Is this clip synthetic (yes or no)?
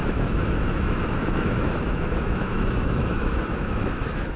yes